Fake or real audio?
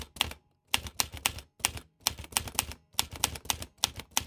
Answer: real